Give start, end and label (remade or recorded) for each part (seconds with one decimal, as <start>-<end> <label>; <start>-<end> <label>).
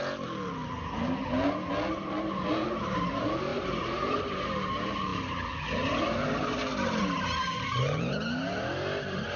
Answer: 0.0-3.5 recorded; 3.5-4.2 remade; 4.2-9.4 recorded